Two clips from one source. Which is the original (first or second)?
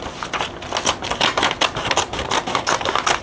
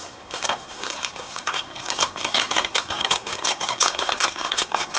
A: first